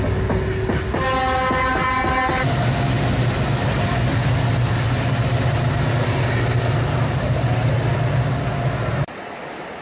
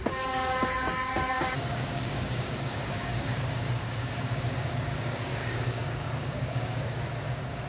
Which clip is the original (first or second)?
first